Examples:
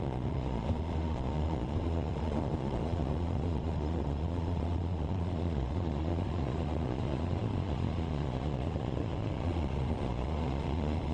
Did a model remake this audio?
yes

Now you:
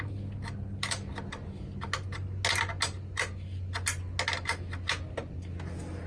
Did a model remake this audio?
no